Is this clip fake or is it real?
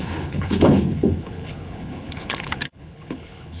fake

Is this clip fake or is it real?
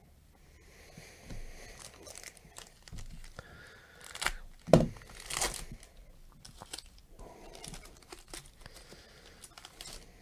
real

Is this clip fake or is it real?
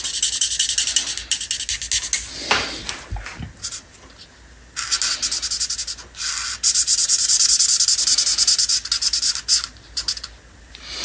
real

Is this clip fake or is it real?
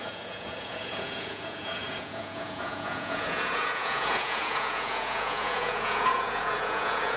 fake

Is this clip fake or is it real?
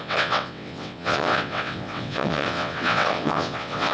fake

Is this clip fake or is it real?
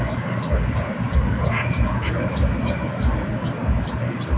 fake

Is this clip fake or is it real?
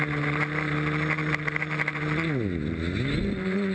real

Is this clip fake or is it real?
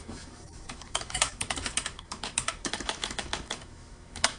fake